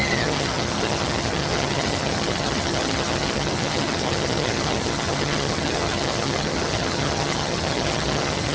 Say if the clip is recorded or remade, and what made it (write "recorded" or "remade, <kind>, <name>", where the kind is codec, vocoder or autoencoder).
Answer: remade, vocoder, HiFi-GAN